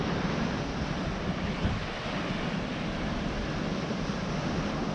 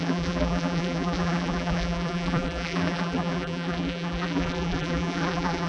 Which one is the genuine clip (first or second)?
first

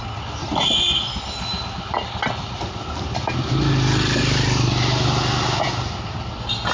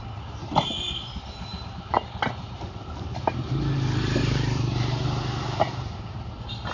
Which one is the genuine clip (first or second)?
first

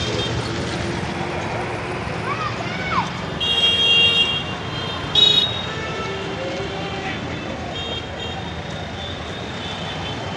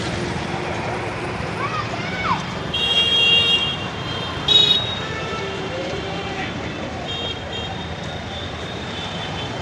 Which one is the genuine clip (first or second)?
first